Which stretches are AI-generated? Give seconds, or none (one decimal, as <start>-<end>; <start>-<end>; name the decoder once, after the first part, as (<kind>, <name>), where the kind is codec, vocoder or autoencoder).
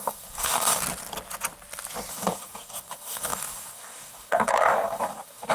0.0-0.8 (codec, DAC); 2.1-5.5